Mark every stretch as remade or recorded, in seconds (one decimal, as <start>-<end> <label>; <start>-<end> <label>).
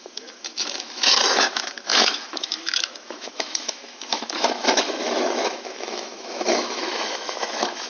0.0-7.9 remade